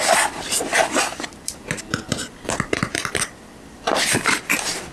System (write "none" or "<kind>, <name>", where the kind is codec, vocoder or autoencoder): vocoder, BigVGAN v2